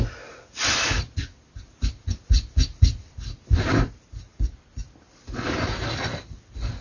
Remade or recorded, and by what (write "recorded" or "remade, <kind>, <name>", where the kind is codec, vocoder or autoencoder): recorded